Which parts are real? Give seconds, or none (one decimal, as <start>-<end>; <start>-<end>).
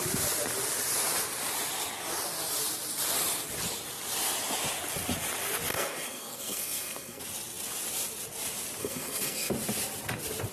0.0-5.7; 7.2-8.8; 9.5-10.5